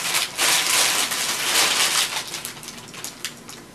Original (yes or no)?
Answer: yes